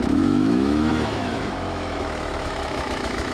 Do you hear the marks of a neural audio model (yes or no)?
yes